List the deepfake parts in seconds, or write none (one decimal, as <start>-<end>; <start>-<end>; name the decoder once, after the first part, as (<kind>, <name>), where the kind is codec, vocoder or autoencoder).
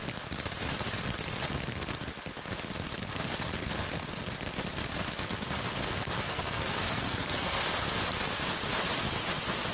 6.3-7.6 (codec, SNAC)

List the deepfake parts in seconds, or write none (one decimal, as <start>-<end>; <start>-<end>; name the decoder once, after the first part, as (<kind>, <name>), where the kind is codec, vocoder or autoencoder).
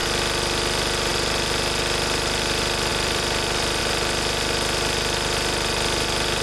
2.9-3.8 (vocoder, BigVGAN v2)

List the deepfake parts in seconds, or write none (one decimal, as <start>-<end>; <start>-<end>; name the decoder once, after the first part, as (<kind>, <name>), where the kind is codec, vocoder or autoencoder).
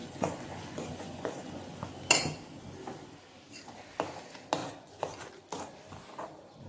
0.0-1.9 (vocoder, Vocos); 4.6-5.3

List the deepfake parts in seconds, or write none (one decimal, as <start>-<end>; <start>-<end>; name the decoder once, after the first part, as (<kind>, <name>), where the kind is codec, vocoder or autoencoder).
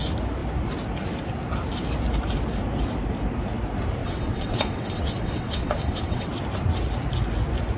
4.0-6.3 (vocoder, WaveNeXt)